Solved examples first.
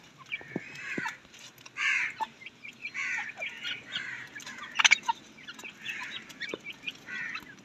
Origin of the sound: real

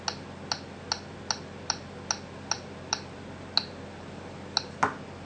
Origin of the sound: real